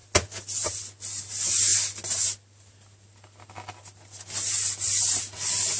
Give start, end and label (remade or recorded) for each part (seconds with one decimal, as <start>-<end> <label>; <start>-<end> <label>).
0.0-5.8 recorded